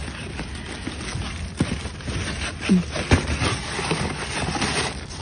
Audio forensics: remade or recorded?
recorded